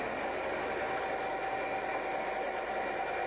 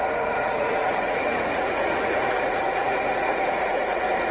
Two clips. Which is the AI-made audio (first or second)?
second